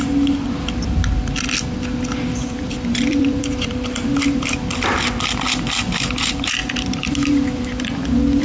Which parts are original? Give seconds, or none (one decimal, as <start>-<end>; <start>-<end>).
0.0-2.0

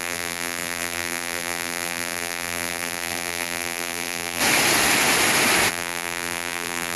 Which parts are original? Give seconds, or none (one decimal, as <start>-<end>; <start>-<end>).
4.4-5.7

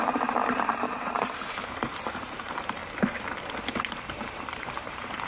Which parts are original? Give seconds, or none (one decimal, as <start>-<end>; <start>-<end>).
2.8-4.1

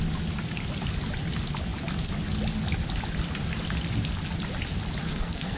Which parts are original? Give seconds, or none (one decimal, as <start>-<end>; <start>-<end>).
0.0-5.0

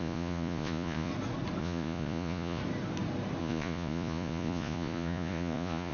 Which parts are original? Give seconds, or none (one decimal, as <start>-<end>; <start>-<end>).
1.1-1.6; 2.6-3.4

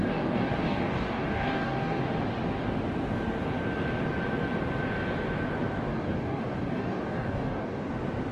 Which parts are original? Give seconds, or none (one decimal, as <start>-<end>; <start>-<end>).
2.0-5.9; 7.9-8.3

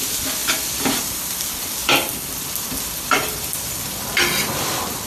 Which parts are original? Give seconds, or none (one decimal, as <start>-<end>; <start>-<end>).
0.0-0.4; 1.0-1.8; 4.0-5.1

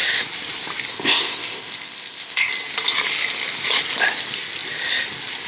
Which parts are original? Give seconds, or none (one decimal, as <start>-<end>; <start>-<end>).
0.0-0.9; 2.5-5.5